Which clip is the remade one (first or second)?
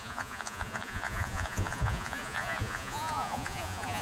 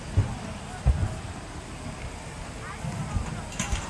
first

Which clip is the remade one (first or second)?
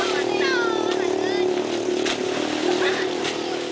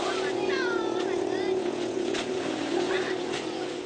second